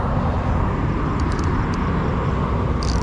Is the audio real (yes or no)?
yes